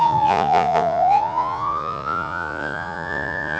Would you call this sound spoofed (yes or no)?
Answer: yes